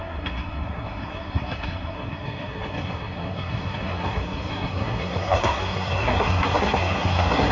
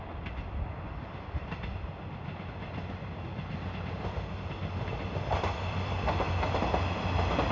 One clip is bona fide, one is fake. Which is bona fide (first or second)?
second